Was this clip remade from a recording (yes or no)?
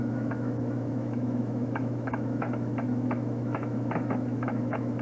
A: yes